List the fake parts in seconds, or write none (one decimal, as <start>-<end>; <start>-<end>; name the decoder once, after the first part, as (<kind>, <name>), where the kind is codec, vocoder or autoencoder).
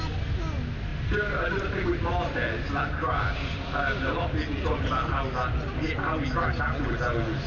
none